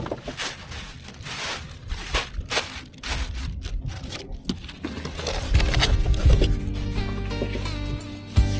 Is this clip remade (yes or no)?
no